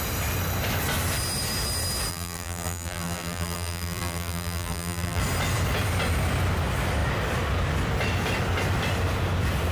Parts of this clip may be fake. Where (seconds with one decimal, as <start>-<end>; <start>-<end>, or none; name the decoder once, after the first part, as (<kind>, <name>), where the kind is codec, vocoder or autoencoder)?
2.1-5.2 (vocoder, BigVGAN v2)